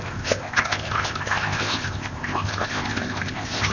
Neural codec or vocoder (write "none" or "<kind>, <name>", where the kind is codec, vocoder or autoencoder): codec, ZipCodec